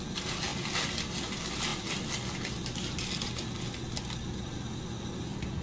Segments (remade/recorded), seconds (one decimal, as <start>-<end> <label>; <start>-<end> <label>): 0.0-5.6 recorded